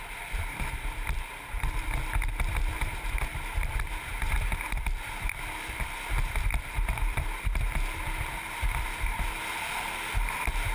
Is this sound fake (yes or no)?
yes